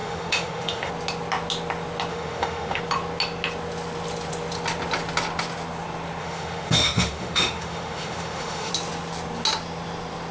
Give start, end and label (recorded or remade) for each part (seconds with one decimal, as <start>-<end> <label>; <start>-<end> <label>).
0.0-0.9 remade; 0.9-2.1 recorded; 2.1-2.8 remade; 2.8-6.2 recorded; 6.2-8.7 remade; 8.7-10.3 recorded